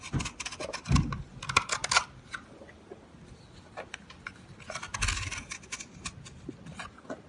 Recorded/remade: recorded